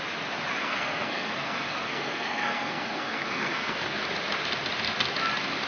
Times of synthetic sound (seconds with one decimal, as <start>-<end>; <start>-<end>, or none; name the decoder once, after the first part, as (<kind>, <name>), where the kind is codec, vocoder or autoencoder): 0.6-4.0 (codec, SNAC)